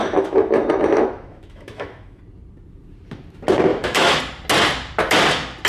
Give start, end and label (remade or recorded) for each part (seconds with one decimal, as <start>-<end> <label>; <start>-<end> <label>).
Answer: 0.0-2.2 remade; 2.2-3.7 recorded; 3.7-4.2 remade; 4.2-5.7 recorded